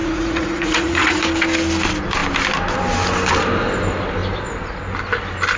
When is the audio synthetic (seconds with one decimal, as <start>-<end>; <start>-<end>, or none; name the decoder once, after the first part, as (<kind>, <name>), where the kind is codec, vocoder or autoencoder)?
0.0-1.2 (vocoder, Vocos)